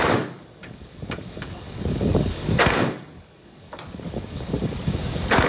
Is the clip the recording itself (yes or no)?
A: no